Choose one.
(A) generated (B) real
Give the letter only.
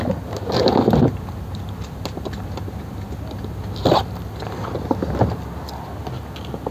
B